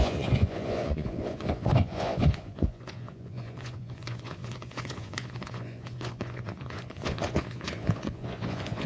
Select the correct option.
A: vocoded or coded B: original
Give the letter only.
A